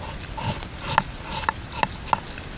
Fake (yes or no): no